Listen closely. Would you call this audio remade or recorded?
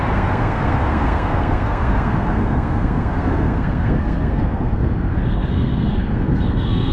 remade